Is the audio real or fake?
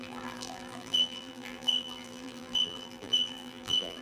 fake